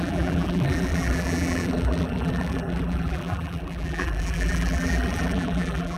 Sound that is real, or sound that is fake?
fake